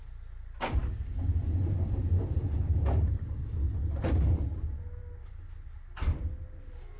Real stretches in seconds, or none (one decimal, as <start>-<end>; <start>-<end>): 0.0-7.0